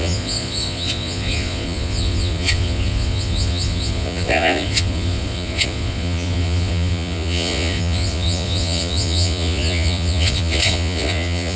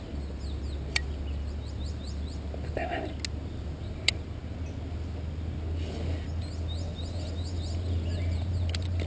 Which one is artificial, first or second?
first